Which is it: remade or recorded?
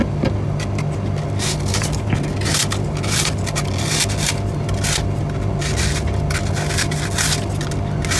recorded